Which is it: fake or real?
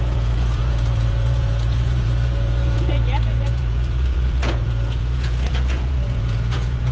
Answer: fake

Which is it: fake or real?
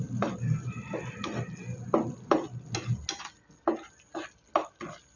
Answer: real